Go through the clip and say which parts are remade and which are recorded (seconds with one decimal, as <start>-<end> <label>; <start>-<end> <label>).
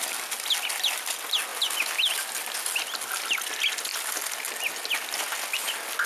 0.0-6.1 recorded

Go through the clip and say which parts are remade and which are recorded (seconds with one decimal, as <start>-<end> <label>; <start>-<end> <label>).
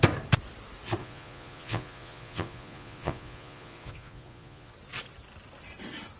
0.0-1.0 recorded; 1.0-4.7 remade; 4.7-6.2 recorded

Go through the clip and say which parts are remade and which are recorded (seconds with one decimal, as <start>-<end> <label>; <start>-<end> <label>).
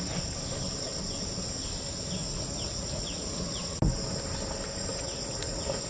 0.0-2.2 recorded; 2.2-3.8 remade; 3.8-4.9 recorded; 4.9-5.9 remade